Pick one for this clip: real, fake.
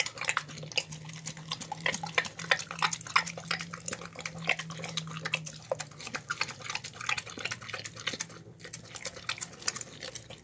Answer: real